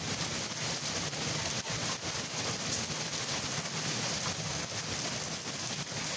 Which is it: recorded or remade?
recorded